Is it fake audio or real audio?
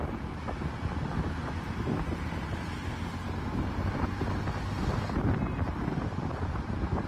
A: real